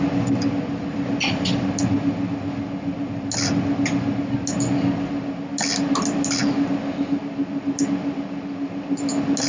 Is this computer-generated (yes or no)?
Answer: no